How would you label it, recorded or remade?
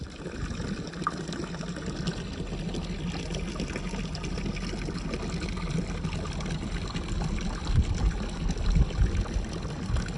recorded